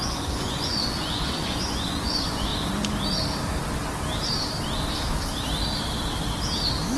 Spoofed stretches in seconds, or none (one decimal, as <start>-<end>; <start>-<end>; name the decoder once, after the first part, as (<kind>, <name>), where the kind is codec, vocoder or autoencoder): 0.0-2.5 (vocoder, Vocos)